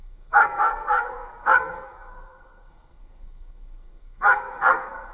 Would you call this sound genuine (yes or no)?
no